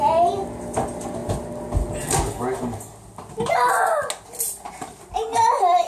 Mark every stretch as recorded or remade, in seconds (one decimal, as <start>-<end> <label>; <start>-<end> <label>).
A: 0.0-5.9 recorded

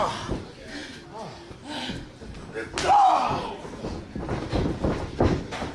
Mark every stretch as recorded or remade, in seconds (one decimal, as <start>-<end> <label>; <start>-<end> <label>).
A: 0.0-5.7 recorded

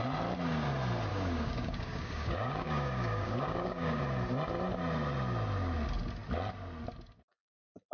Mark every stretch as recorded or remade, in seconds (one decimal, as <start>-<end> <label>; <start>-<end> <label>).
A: 0.0-1.1 recorded; 1.1-4.0 remade; 4.0-7.9 recorded

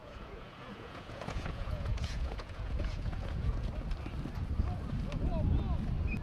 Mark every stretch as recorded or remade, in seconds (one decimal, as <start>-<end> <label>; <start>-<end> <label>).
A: 0.0-3.7 remade; 3.7-6.2 recorded

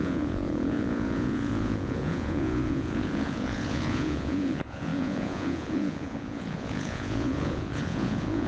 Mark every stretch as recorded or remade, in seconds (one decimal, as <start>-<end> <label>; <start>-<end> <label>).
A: 0.0-8.5 remade

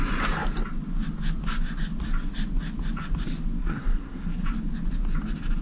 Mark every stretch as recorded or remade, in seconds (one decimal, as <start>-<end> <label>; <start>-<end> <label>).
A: 0.0-3.6 recorded; 3.6-4.4 remade; 4.4-5.6 recorded

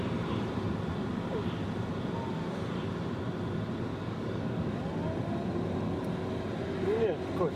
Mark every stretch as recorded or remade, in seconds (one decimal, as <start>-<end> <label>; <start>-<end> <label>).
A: 0.0-3.9 recorded; 3.9-4.8 remade; 4.8-7.6 recorded